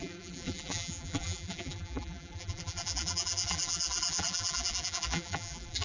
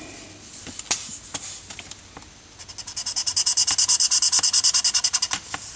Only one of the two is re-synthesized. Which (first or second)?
first